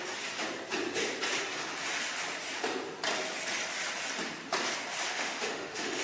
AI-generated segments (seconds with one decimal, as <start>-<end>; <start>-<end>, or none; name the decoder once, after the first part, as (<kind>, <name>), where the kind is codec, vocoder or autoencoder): 5.1-6.0 (autoencoder, DAC-VAE)